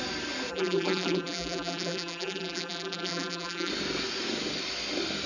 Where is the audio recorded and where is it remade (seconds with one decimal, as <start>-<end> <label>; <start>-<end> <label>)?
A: 0.0-0.5 recorded; 0.5-3.7 remade; 3.7-5.3 recorded